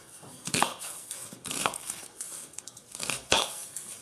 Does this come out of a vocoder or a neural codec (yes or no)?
yes